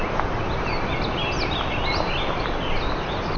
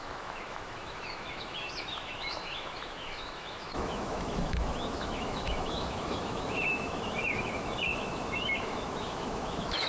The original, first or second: first